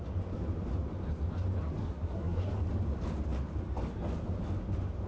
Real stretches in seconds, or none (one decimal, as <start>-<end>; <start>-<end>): 0.0-1.8; 2.5-5.1